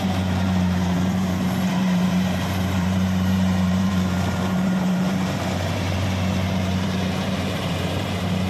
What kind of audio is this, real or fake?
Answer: fake